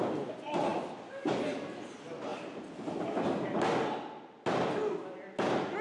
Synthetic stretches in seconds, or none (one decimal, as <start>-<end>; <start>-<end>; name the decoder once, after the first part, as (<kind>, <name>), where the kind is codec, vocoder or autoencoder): none